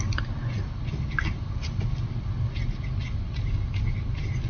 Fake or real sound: real